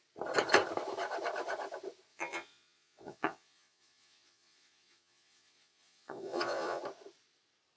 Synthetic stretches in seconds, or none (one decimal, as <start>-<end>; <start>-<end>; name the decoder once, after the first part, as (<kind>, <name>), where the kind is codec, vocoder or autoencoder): 2.1-6.8 (vocoder, Vocos)